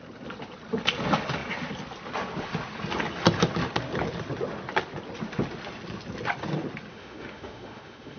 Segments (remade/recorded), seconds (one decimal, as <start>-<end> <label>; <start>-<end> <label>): 0.0-6.9 recorded; 6.9-8.2 remade